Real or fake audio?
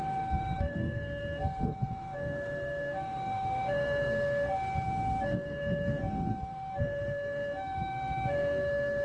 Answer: fake